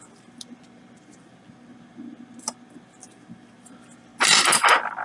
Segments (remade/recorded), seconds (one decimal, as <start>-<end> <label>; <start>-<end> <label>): 0.0-5.0 recorded